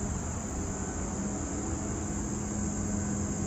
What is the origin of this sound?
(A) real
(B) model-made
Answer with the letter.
A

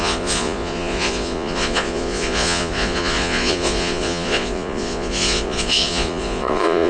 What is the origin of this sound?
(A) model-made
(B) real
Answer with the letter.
A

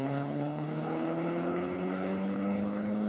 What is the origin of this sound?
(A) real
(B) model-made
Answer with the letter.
B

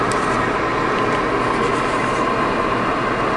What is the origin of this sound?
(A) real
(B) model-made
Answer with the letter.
A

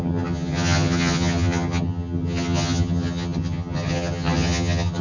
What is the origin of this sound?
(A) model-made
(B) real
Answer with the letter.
A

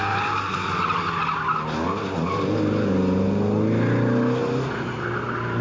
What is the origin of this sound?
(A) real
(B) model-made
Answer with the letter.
A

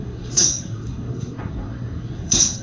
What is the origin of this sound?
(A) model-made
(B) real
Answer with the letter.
A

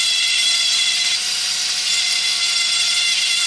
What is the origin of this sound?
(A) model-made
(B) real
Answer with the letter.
B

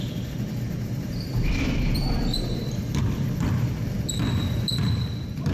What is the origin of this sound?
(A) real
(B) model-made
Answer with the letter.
B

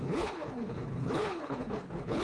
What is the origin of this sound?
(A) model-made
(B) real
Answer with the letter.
A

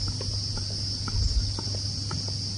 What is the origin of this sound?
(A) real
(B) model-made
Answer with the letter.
A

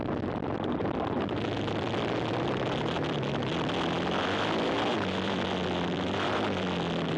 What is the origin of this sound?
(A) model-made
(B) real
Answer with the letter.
A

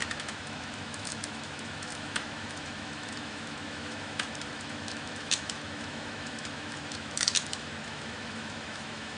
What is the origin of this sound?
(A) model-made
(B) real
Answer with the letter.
A